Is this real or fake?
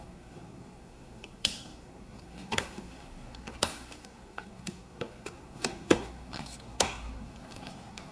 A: fake